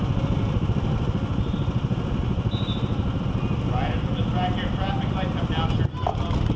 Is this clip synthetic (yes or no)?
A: no